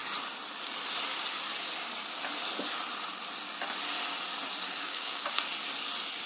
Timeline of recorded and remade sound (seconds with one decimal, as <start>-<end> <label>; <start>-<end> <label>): 0.0-4.7 recorded; 4.7-5.4 remade; 5.4-6.3 recorded